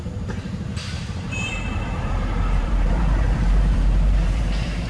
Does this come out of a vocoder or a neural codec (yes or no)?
yes